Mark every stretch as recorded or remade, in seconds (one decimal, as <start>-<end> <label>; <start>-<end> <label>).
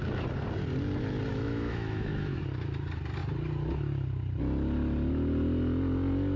0.0-1.3 recorded; 1.3-2.4 remade; 2.4-6.4 recorded